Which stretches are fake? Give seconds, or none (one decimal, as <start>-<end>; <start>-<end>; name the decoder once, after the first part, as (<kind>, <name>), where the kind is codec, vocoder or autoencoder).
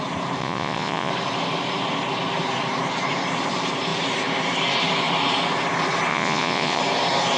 0.4-1.1 (vocoder, Vocos); 6.1-6.8